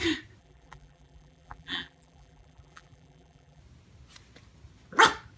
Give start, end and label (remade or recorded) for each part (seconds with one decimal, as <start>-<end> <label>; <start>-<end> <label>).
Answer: 0.0-0.4 recorded; 0.4-3.6 remade; 3.6-5.4 recorded